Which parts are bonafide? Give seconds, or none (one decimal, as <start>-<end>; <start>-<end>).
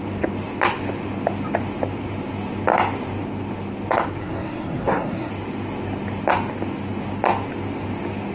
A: 0.0-4.2; 5.3-8.3